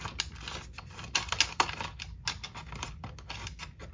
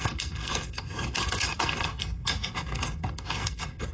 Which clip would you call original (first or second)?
first